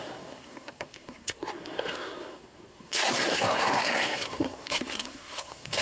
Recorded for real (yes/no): no